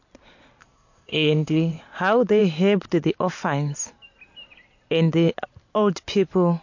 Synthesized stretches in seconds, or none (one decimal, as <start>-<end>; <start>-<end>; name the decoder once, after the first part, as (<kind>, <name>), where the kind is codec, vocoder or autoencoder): 0.6-1.8 (codec, ZipCodec)